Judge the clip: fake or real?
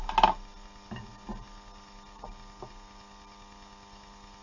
real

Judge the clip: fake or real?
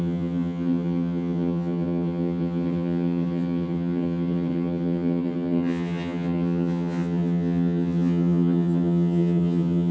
fake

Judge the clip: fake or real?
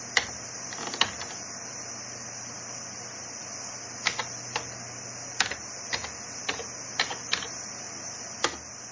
real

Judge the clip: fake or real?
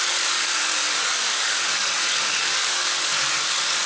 fake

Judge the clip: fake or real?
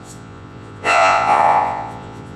fake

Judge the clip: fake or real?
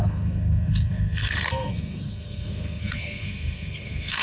fake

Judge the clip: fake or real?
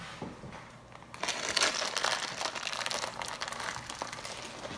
real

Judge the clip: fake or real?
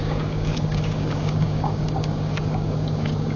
fake